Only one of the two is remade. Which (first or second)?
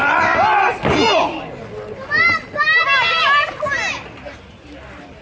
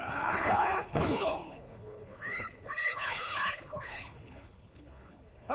second